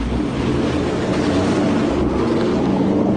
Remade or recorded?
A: recorded